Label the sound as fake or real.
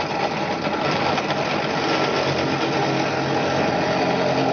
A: real